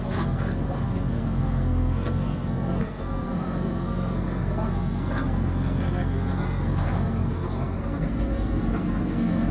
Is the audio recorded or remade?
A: remade